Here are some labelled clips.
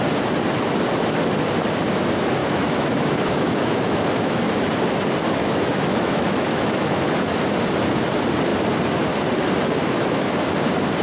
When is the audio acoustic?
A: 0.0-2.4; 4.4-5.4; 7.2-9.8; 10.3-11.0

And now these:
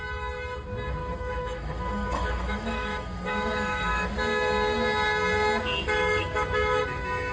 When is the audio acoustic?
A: 0.0-1.0; 4.1-5.7; 6.8-7.3

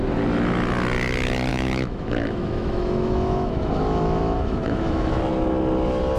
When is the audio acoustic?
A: 0.0-1.5; 5.2-6.2

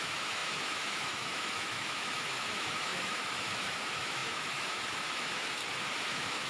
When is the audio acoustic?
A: 5.6-6.1

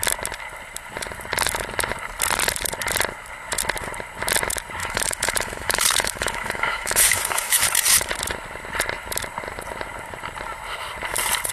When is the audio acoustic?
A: 0.0-4.8; 8.1-11.5